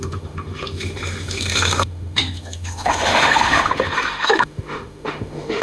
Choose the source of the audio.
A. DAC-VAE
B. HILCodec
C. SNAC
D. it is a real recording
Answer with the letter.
A